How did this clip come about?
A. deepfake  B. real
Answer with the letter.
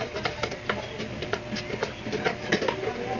B